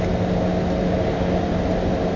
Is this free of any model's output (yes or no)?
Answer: yes